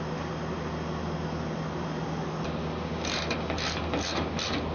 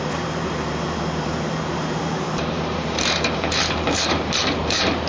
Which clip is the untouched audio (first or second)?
first